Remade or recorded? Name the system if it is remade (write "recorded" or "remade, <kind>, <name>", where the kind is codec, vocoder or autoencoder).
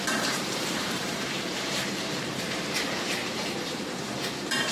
remade, vocoder, BigVGAN v2